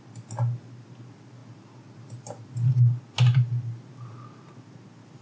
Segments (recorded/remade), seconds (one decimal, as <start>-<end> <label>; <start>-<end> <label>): 0.0-5.2 recorded